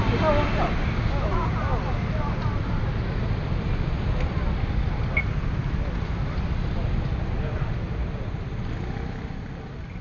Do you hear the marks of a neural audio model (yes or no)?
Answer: no